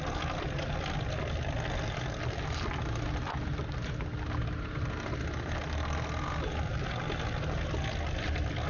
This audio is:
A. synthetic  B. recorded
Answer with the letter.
B